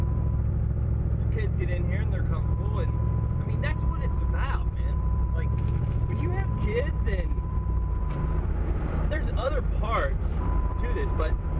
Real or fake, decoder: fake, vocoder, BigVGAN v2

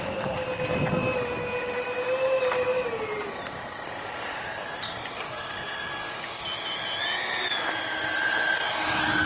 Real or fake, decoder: real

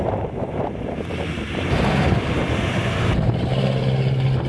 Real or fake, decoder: fake, vocoder, BigVGAN v2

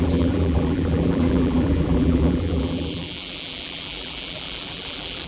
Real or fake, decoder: fake, vocoder, BigVGAN v2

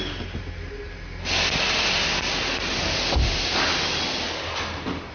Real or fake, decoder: real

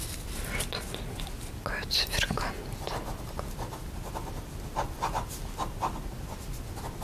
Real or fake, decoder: real